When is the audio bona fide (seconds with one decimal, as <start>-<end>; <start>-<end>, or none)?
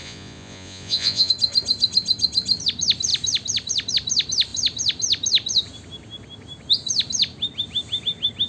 1.3-8.5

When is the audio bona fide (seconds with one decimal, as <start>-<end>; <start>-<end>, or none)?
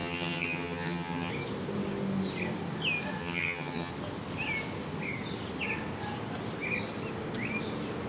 1.3-3.2; 3.9-8.1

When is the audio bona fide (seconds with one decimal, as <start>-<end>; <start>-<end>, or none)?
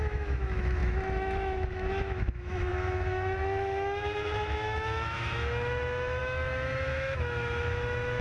none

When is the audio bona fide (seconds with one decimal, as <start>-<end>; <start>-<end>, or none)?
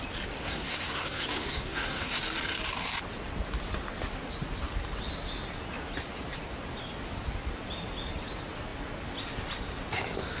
0.0-0.4; 2.2-10.4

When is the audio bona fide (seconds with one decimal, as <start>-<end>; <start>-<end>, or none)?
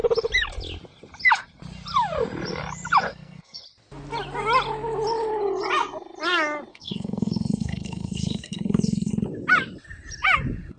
0.0-3.1; 3.6-6.7; 9.1-10.8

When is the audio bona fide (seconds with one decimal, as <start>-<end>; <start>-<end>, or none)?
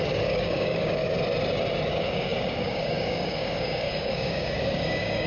1.0-1.9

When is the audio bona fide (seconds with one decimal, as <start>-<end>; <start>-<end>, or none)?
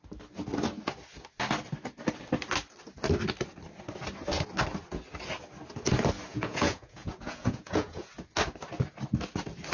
0.0-6.3; 8.1-9.7